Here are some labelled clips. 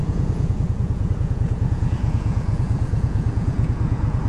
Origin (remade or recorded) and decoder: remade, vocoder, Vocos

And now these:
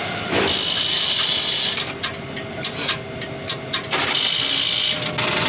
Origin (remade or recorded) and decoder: recorded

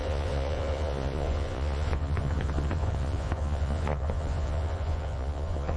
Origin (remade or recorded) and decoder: remade, vocoder, Vocos